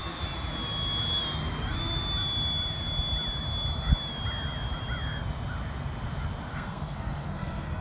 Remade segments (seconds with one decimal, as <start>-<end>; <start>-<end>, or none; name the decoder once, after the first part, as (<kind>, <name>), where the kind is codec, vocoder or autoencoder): 6.5-7.8 (codec, SNAC)